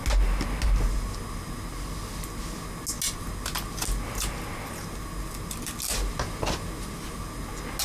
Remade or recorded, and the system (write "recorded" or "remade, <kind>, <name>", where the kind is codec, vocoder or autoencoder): recorded